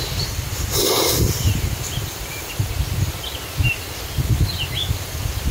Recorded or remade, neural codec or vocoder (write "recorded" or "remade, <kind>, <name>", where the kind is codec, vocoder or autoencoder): remade, vocoder, BigVGAN v2